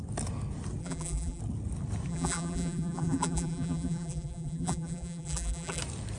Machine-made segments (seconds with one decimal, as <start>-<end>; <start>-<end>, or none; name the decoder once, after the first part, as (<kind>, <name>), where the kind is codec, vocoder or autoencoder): 0.8-1.4 (vocoder, BigVGAN v2); 2.1-5.8